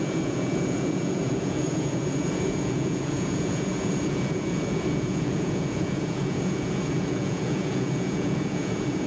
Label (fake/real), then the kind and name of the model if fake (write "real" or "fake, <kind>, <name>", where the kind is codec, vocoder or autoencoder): fake, vocoder, Vocos